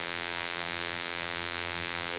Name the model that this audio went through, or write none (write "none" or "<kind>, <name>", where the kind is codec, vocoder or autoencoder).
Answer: vocoder, BigVGAN v2